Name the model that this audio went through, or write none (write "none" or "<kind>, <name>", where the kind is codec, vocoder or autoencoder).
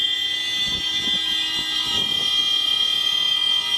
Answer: none